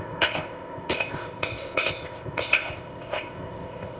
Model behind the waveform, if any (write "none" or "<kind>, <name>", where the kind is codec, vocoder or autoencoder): codec, ZipCodec